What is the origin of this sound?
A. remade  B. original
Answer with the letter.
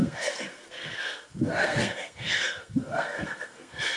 A